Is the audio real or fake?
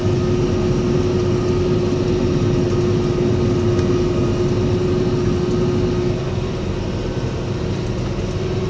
real